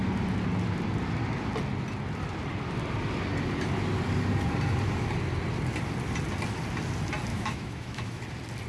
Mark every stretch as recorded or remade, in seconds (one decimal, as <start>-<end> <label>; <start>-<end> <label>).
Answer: 0.0-7.3 recorded; 7.3-8.2 remade; 8.2-8.7 recorded